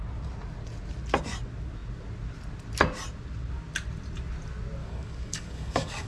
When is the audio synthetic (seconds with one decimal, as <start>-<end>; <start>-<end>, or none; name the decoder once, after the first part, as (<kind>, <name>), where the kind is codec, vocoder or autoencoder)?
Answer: 4.8-6.1 (codec, DAC)